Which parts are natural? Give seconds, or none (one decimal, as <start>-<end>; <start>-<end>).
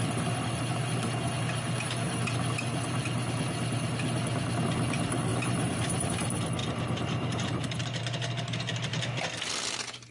0.0-5.3; 6.1-6.6; 8.0-10.1